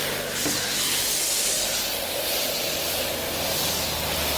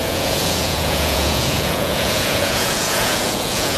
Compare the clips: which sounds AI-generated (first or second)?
second